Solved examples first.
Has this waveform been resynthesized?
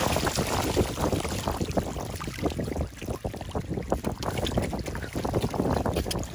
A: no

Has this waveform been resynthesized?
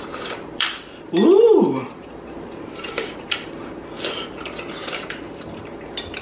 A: yes